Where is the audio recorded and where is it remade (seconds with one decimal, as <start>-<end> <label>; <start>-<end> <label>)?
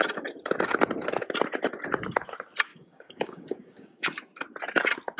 0.0-2.7 recorded; 2.7-4.1 remade; 4.1-5.2 recorded